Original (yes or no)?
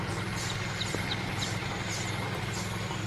yes